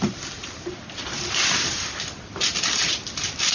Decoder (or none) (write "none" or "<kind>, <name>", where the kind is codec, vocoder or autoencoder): none